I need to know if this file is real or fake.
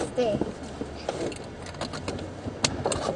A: real